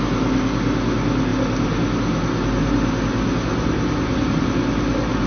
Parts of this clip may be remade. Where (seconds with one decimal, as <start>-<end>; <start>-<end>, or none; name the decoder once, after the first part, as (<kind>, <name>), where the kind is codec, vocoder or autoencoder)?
none